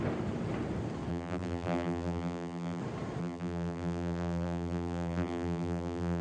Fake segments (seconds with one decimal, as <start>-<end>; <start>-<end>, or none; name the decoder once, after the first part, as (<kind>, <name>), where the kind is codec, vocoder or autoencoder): 1.1-2.8 (vocoder, BigVGAN v2); 3.2-6.2